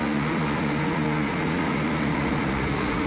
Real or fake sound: fake